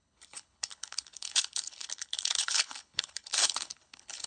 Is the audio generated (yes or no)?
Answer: yes